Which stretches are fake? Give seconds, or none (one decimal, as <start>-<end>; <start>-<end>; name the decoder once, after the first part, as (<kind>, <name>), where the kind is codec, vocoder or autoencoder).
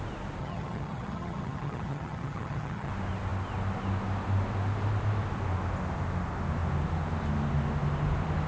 0.4-2.9 (vocoder, HiFi-GAN)